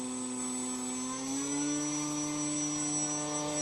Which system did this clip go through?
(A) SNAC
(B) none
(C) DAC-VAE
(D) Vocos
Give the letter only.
B